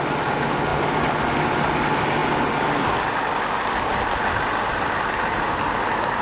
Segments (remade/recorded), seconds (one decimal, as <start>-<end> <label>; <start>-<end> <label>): 0.0-6.2 recorded